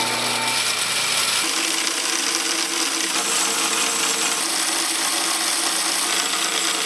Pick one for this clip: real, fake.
real